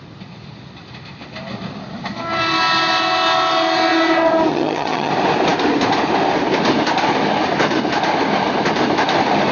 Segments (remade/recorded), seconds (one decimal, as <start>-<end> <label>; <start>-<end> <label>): 0.0-4.5 recorded; 4.5-5.1 remade; 5.1-9.5 recorded